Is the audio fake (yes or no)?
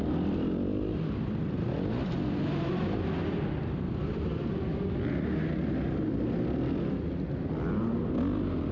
no